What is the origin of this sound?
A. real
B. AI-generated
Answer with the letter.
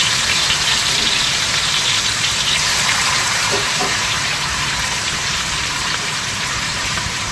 B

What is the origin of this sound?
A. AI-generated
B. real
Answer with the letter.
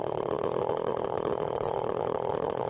A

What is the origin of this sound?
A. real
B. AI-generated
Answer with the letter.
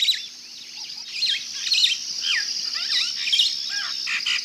A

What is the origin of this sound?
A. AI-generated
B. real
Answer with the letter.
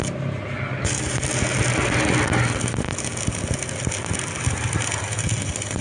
B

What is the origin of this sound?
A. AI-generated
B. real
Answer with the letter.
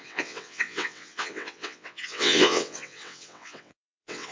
A